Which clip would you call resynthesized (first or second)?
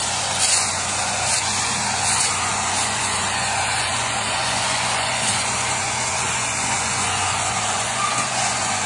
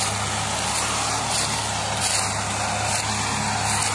first